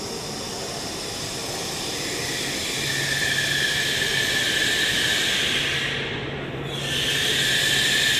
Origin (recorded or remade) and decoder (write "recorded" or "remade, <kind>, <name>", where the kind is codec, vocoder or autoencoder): recorded